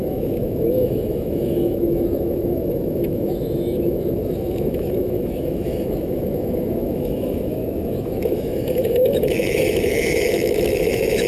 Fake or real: fake